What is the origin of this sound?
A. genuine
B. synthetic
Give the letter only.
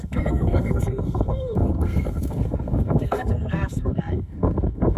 B